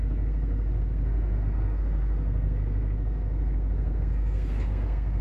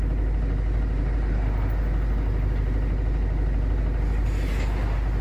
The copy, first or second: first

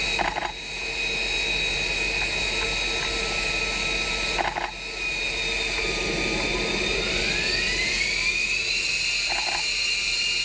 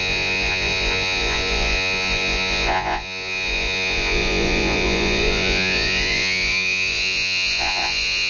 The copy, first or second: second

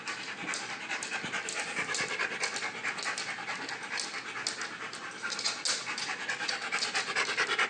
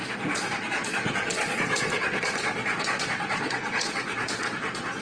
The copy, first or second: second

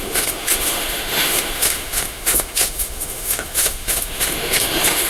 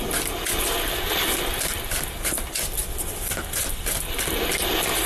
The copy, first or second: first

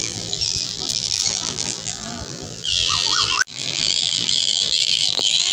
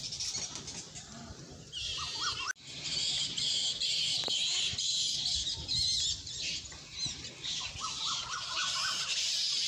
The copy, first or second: first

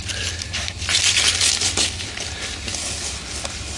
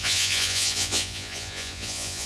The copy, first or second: second